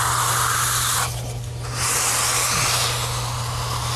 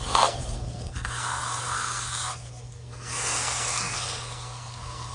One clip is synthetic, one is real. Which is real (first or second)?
first